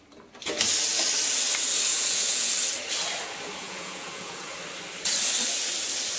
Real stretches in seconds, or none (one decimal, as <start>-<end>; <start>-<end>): 0.0-1.9; 2.5-3.6; 4.6-6.2